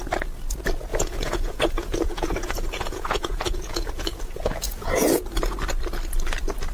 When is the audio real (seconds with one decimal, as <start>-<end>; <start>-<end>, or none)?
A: 0.0-0.9; 4.9-6.7